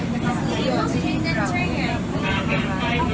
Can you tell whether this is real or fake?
real